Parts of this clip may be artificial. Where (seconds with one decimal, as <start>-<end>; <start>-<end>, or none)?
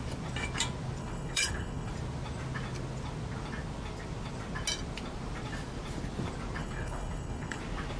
1.0-1.9; 6.6-7.6